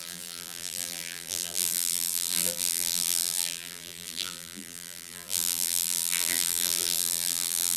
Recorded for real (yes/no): no